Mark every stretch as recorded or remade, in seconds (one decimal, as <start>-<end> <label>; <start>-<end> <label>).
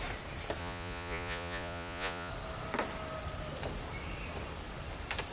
0.0-0.6 recorded; 0.6-2.3 remade; 2.3-5.3 recorded